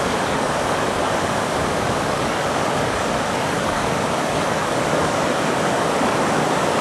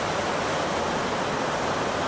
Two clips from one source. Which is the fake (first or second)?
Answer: first